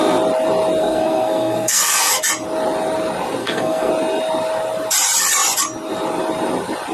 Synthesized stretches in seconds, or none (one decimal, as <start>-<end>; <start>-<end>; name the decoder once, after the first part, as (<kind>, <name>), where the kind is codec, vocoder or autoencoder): 0.8-2.2 (codec, SNAC); 3.4-3.9